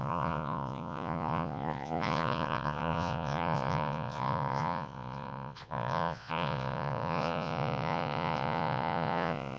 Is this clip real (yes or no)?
no